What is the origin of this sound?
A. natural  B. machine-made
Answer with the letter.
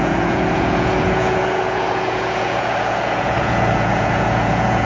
B